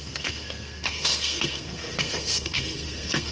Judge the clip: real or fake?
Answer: fake